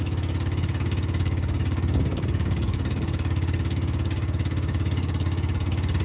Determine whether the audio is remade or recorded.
remade